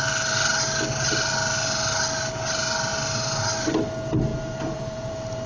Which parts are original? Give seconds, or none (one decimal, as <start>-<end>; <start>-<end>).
0.0-4.3; 5.1-5.5